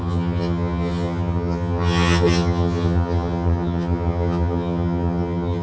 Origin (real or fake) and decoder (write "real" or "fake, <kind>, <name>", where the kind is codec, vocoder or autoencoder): fake, vocoder, HiFi-GAN